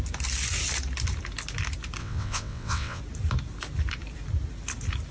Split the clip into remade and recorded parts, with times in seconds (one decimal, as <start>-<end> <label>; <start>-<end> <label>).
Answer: 0.0-2.0 recorded; 2.0-3.0 remade; 3.0-5.1 recorded